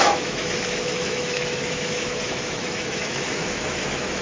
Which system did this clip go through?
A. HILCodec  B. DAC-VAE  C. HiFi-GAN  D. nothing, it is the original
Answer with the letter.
B